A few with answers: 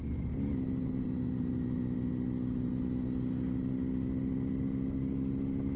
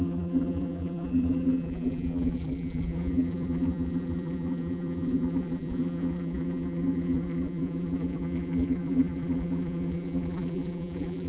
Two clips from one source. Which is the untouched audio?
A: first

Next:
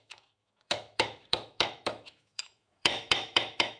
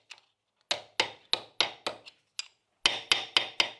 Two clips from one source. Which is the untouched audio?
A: second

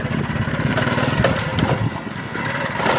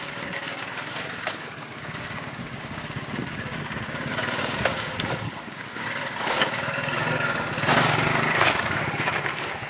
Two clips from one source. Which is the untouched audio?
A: first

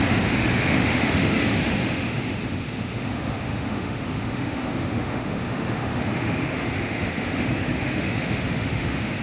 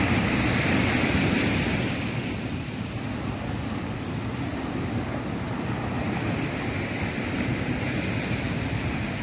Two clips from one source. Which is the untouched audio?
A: second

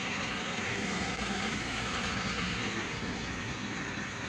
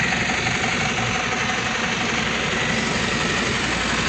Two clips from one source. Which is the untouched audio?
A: second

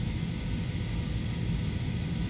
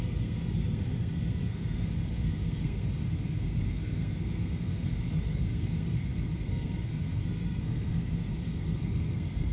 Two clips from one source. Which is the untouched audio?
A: first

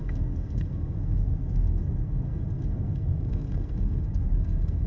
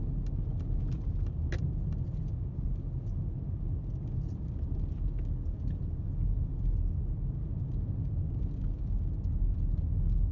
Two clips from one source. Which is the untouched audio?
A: second